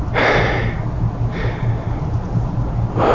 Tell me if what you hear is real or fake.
real